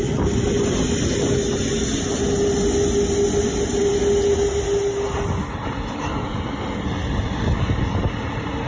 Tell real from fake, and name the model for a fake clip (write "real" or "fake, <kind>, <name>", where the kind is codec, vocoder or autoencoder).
real